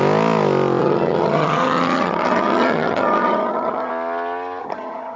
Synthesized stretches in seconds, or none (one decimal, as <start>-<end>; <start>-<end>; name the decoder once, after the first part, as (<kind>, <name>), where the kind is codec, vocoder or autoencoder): 0.8-3.9 (vocoder, HiFi-GAN); 4.6-5.2